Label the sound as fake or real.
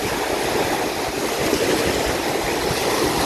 real